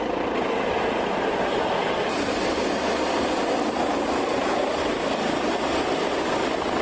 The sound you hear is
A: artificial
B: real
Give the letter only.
B